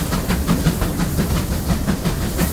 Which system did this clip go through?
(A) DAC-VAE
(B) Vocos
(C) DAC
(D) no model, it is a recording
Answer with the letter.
D